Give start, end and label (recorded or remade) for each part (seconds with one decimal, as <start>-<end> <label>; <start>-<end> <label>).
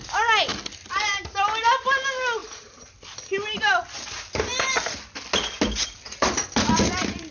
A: 0.0-2.4 recorded; 2.4-3.0 remade; 3.0-7.3 recorded